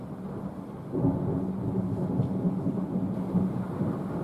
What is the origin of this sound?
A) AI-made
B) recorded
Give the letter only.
B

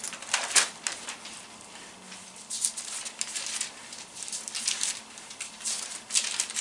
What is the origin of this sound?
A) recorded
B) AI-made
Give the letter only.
A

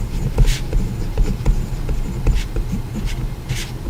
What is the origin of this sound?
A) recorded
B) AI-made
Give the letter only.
B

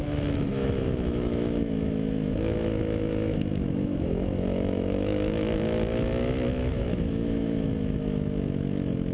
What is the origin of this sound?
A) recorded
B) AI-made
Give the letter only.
B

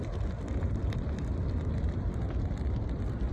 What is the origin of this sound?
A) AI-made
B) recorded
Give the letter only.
A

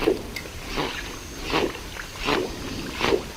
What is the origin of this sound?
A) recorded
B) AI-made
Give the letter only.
A